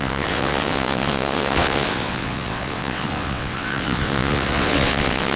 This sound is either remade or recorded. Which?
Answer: remade